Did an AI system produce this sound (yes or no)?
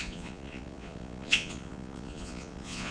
yes